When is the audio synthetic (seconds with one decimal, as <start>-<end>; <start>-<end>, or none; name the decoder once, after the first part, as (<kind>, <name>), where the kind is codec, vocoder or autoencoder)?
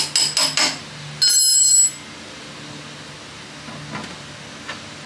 none